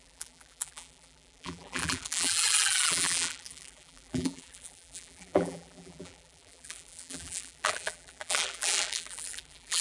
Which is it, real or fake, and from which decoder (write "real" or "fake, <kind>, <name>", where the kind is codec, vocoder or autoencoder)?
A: fake, vocoder, BigVGAN v2